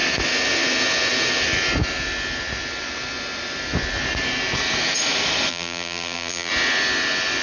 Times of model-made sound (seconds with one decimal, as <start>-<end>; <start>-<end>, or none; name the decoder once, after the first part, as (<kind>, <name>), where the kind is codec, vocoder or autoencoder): 5.5-6.5 (vocoder, BigVGAN v2)